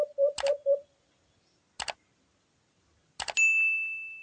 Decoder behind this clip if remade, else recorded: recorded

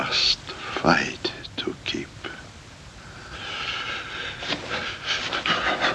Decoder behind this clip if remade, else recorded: recorded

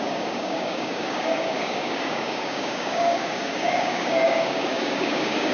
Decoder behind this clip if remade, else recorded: remade, codec, DAC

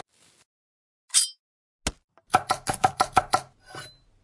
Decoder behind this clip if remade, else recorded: recorded